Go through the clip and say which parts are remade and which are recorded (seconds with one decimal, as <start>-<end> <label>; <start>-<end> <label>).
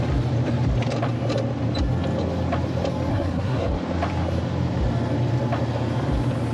0.0-3.1 recorded; 3.1-3.7 remade; 3.7-6.5 recorded